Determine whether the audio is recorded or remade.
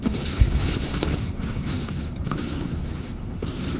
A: remade